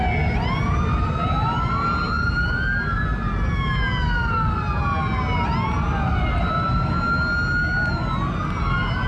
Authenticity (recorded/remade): recorded